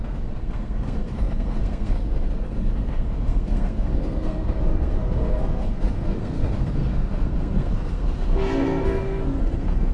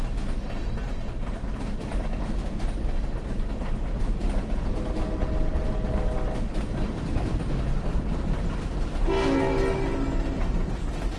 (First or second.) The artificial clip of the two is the first